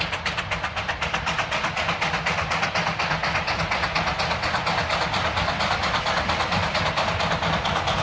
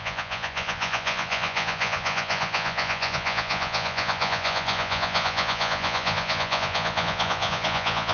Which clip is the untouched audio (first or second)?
first